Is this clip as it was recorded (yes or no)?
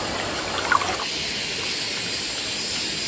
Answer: yes